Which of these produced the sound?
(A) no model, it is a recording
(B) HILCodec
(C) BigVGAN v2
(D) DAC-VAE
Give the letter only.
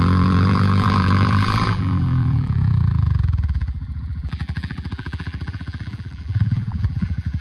C